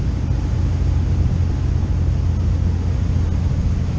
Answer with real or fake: real